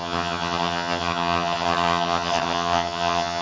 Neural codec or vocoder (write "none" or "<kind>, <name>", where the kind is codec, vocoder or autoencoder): vocoder, HiFi-GAN